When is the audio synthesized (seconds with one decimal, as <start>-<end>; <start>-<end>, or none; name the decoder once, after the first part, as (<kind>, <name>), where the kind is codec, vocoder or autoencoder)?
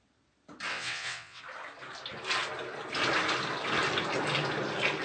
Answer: 0.7-1.4 (vocoder, WaveNeXt)